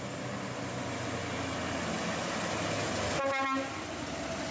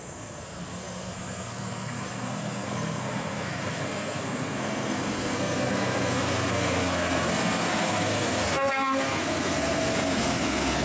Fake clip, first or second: second